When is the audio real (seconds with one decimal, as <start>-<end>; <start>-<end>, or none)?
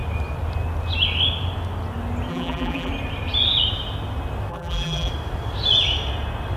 0.0-2.3; 2.9-4.5; 5.1-6.6